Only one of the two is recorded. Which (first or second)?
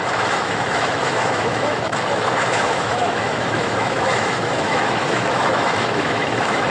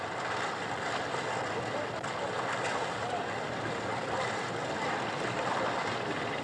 second